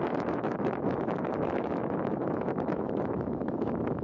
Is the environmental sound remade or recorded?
remade